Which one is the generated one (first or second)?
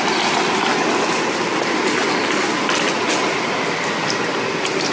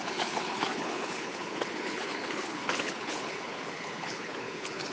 second